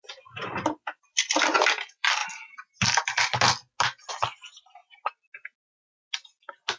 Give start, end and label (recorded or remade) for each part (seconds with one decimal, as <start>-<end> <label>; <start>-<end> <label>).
0.0-2.2 remade; 2.2-4.1 recorded; 4.1-4.8 remade; 4.8-6.8 recorded